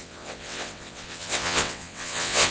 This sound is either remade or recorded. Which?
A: remade